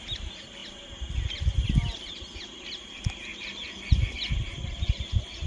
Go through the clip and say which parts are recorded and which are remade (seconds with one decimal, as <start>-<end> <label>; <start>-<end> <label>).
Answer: 0.0-5.5 recorded